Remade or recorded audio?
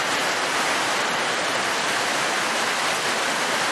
recorded